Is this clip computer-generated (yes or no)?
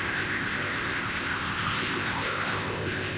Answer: yes